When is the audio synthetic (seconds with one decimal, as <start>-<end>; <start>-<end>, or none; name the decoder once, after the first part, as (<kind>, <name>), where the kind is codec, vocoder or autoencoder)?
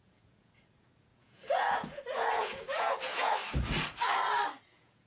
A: 0.0-3.4 (vocoder, Vocos); 4.6-5.1